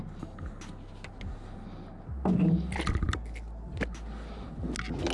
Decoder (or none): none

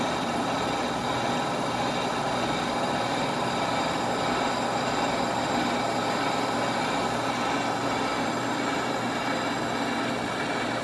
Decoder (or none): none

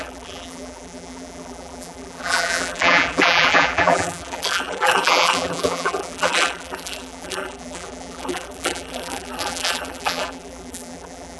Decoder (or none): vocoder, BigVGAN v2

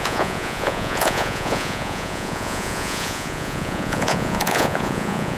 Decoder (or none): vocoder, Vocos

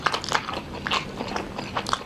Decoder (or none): none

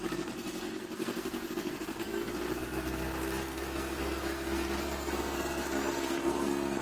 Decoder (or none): codec, SNAC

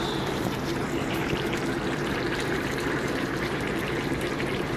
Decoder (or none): vocoder, BigVGAN v2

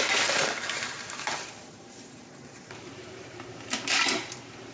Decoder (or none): vocoder, BigVGAN v2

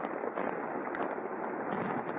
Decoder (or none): none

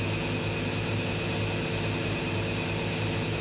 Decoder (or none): none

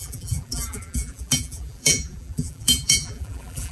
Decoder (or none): vocoder, BigVGAN v2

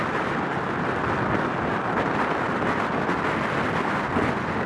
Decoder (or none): none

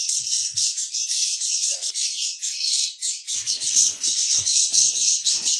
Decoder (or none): codec, SNAC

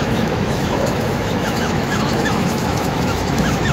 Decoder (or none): autoencoder, DAC-VAE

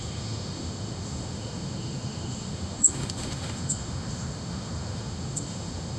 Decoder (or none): autoencoder, DAC-VAE